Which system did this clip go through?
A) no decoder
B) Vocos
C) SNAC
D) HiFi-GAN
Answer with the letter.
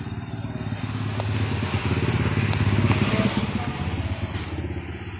A